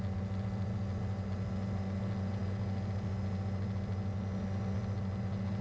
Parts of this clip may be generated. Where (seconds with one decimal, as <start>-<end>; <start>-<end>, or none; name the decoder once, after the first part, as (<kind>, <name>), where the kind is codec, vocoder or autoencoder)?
none